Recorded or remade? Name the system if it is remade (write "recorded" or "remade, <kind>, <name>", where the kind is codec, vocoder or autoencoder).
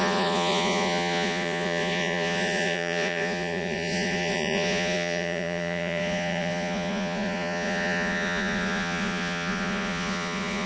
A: remade, vocoder, Vocos